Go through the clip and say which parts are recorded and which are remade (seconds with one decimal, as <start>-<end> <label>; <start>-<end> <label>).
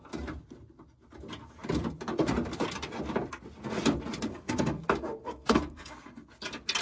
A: 0.0-4.3 recorded; 4.3-4.8 remade; 4.8-5.2 recorded; 5.2-6.3 remade; 6.3-6.8 recorded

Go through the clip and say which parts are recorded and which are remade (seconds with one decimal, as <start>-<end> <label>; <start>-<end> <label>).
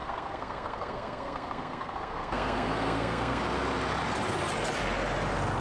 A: 0.0-3.4 remade; 3.4-5.6 recorded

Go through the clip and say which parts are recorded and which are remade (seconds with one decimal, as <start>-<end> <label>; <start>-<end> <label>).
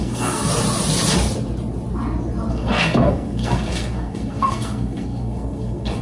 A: 0.0-0.5 remade; 0.5-2.5 recorded; 2.5-6.0 remade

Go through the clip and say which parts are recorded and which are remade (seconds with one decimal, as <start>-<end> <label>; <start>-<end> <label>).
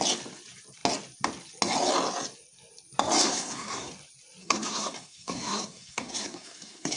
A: 0.0-3.2 recorded; 3.2-3.9 remade; 3.9-4.4 recorded; 4.4-7.0 remade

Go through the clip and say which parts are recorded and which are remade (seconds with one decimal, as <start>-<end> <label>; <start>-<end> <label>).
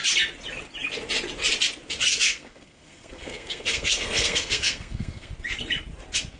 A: 0.0-2.1 recorded; 2.1-5.3 remade; 5.3-6.4 recorded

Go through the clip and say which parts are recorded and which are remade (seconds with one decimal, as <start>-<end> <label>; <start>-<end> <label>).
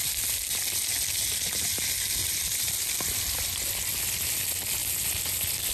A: 0.0-5.7 recorded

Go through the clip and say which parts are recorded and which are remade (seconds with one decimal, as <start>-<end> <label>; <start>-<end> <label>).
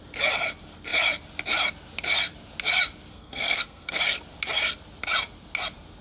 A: 0.0-3.1 recorded; 3.1-4.0 remade; 4.0-6.0 recorded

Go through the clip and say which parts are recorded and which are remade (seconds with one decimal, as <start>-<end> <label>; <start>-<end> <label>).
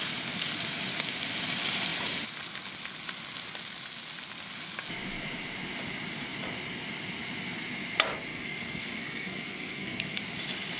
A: 0.0-8.3 recorded; 8.3-10.2 remade; 10.2-10.8 recorded